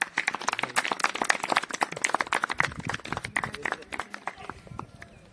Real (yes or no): yes